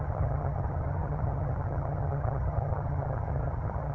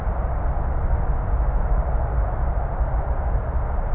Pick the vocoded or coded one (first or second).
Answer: first